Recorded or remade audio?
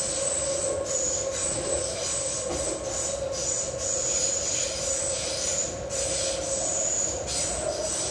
recorded